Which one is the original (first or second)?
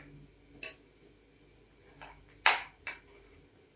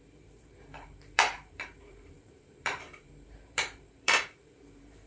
first